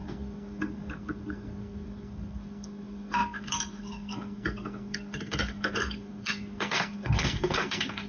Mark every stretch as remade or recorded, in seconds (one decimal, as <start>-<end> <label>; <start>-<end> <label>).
0.0-8.1 remade